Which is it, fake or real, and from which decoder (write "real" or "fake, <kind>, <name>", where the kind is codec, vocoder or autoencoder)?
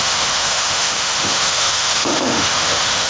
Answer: fake, autoencoder, DAC-VAE